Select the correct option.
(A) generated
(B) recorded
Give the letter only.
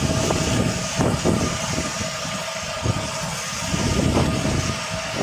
B